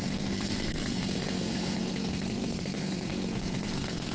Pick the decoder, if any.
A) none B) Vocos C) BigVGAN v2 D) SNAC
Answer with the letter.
D